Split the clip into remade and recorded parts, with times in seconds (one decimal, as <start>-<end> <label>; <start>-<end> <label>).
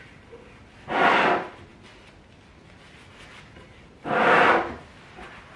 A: 0.0-5.6 recorded